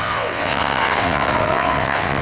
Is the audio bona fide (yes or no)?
no